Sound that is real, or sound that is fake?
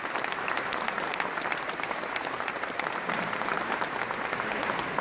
fake